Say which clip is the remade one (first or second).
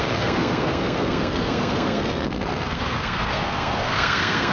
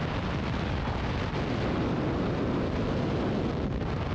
first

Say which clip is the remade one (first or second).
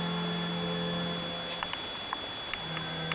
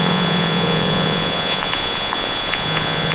second